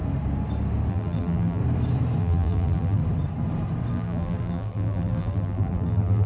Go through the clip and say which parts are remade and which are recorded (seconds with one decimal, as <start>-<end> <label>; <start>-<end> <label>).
0.0-0.9 recorded; 0.9-1.6 remade; 1.6-2.2 recorded; 2.2-3.0 remade; 3.0-3.9 recorded; 3.9-6.3 remade